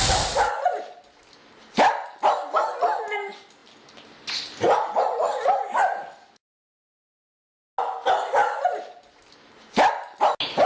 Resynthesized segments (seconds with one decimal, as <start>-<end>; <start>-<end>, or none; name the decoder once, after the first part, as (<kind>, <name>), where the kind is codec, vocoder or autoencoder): none